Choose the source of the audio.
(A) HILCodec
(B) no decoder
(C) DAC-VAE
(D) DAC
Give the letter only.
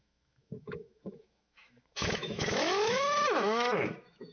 C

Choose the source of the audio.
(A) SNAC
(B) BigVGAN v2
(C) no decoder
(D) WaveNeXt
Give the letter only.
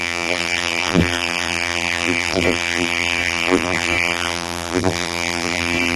B